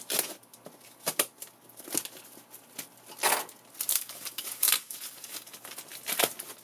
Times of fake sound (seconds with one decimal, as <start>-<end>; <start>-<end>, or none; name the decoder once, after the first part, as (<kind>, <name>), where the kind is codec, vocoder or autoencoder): 3.9-5.8 (codec, DAC)